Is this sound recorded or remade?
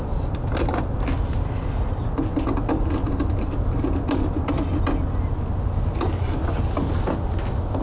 recorded